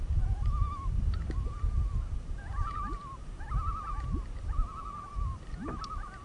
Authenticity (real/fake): real